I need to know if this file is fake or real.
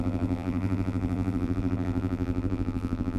fake